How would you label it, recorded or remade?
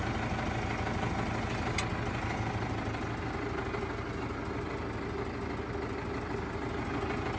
recorded